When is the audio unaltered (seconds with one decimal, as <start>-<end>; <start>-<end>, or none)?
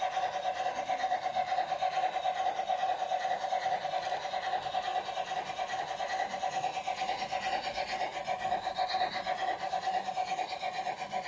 0.0-11.3